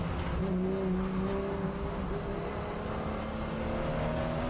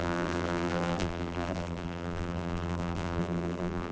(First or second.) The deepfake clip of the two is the second